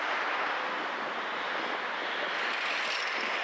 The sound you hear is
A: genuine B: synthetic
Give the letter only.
A